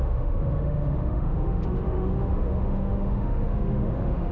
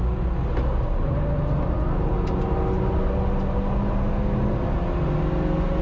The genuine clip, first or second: second